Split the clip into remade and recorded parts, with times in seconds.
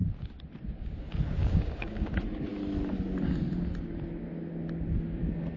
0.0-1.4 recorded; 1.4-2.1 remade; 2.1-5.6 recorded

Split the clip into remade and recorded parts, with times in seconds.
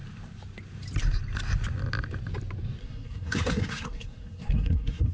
0.0-2.8 recorded; 2.8-5.1 remade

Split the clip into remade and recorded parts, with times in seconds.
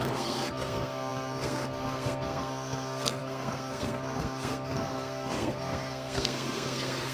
0.0-7.1 remade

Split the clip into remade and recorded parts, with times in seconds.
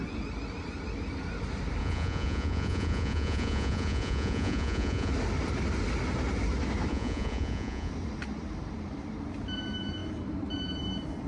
0.0-1.8 recorded; 1.8-5.1 remade; 5.1-6.9 recorded; 6.9-7.9 remade; 7.9-11.3 recorded